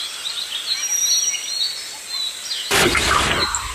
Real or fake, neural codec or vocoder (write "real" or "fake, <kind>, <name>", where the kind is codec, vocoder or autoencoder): real